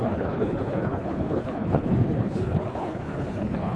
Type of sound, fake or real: fake